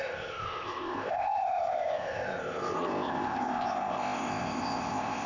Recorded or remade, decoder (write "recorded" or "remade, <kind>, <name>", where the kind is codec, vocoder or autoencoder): remade, codec, ZipCodec